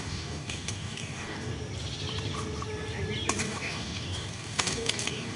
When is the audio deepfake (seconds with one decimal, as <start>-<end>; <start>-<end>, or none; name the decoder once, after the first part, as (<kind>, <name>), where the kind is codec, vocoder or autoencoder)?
0.0-1.5 (codec, DAC); 3.4-5.4